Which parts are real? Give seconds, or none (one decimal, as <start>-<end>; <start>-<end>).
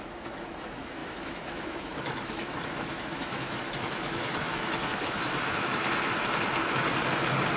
5.8-7.6